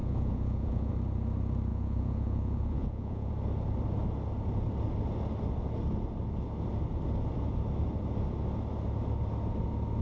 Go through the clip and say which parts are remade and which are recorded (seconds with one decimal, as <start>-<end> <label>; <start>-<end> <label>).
0.0-0.9 remade; 0.9-1.7 recorded; 1.7-3.3 remade; 3.3-10.0 recorded